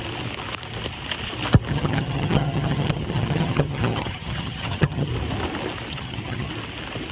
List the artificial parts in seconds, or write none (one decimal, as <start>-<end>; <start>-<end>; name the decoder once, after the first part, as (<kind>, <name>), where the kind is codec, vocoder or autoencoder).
1.7-5.1 (vocoder, HiFi-GAN); 5.9-6.5